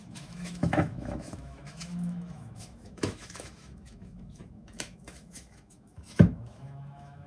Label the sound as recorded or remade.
remade